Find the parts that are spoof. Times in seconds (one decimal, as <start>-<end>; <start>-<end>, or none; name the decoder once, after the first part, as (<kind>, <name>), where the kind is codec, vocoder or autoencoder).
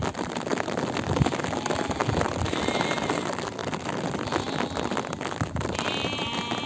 none